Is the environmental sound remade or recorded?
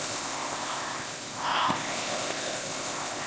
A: remade